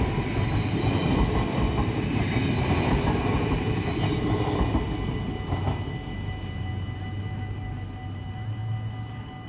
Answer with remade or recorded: recorded